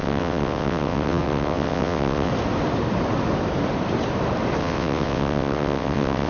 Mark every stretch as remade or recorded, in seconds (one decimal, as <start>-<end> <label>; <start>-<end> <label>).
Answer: 0.0-2.3 remade; 2.3-4.6 recorded; 4.6-6.3 remade